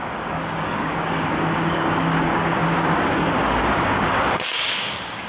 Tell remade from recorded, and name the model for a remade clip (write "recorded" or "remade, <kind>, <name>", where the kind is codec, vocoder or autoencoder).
remade, codec, DAC